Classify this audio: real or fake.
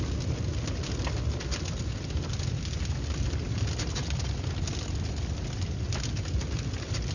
real